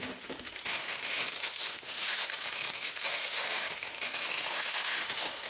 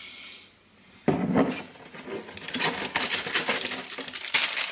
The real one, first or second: second